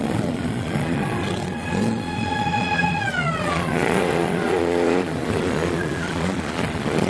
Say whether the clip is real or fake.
fake